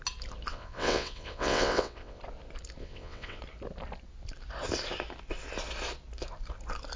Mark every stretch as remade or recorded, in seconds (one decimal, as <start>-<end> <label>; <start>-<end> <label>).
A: 0.0-0.5 recorded; 0.5-2.2 remade; 2.2-2.8 recorded; 2.8-3.4 remade; 3.4-7.0 recorded